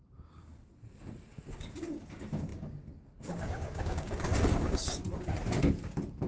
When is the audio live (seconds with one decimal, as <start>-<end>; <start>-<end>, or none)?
5.0-6.3